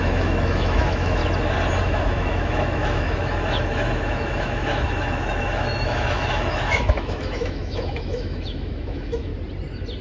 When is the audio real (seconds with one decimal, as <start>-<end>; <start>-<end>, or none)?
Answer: 1.2-1.8; 9.3-10.0